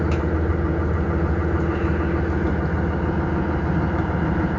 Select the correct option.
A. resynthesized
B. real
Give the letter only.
B